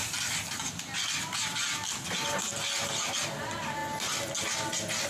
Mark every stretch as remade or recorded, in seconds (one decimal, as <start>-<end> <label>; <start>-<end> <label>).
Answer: 0.0-5.1 recorded